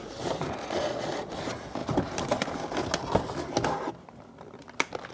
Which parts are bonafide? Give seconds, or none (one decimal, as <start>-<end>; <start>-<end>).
0.0-0.6; 1.3-5.1